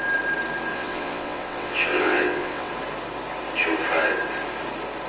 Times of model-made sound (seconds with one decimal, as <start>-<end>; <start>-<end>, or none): 0.7-2.7